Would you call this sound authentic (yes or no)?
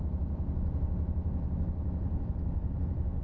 yes